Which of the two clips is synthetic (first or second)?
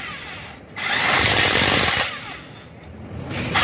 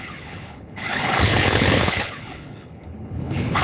second